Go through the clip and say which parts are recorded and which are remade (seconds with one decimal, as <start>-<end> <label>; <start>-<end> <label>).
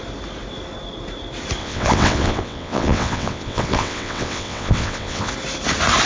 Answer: 0.0-1.6 recorded; 1.6-5.3 remade; 5.3-6.1 recorded